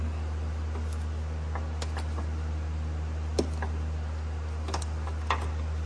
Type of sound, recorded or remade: recorded